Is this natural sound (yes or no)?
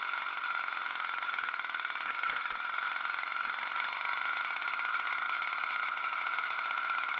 yes